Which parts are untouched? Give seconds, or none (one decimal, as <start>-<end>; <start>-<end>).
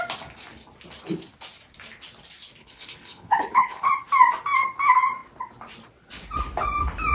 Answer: 0.0-2.6; 3.9-7.1